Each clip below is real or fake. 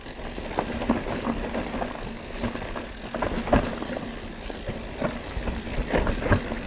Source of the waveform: real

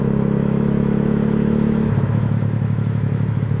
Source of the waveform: fake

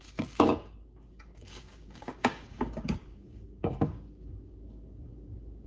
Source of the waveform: fake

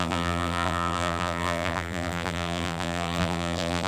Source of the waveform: fake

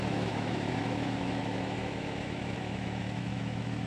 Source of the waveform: fake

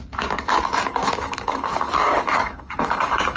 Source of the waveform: fake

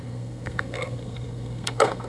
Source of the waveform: fake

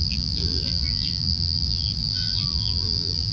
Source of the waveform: fake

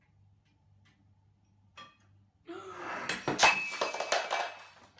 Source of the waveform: real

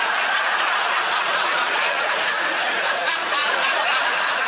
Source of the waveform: fake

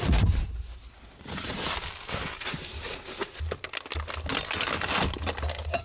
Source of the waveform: real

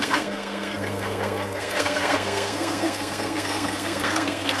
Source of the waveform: fake